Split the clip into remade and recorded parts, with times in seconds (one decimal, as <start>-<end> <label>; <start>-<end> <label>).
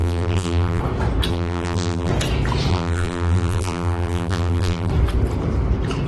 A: 0.0-0.8 remade; 0.8-1.3 recorded; 1.3-2.1 remade; 2.1-2.7 recorded; 2.7-4.9 remade; 4.9-6.1 recorded